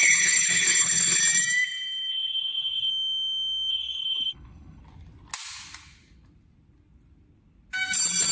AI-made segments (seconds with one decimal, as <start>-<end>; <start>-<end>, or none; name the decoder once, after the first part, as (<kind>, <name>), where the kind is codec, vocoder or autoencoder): 0.0-1.2 (codec, HILCodec); 2.1-2.9; 3.7-4.8